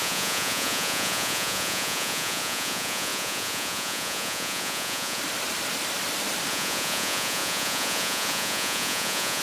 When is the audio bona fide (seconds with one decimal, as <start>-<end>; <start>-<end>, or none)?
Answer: 5.2-6.5